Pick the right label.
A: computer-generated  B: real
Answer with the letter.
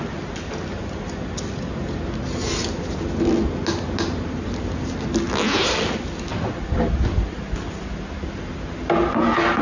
B